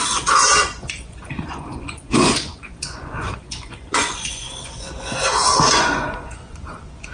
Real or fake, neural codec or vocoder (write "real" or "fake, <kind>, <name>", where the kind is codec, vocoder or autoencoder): fake, vocoder, Vocos